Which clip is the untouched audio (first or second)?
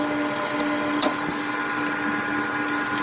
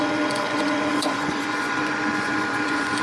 first